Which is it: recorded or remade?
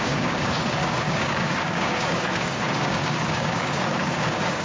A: remade